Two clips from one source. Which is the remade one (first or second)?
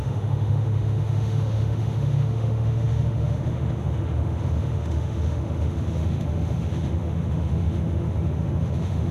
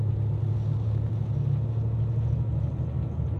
first